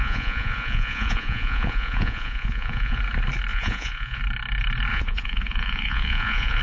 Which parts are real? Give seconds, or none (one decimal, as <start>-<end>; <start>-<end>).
3.0-3.5; 4.2-4.9